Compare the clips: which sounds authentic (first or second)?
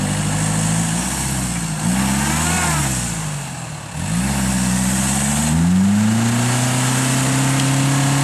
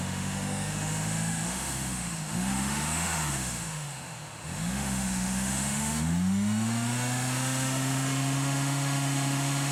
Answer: first